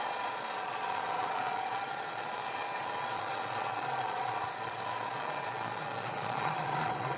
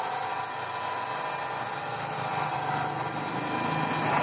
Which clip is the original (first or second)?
second